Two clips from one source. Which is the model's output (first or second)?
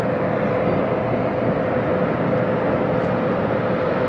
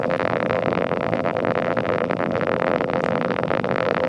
second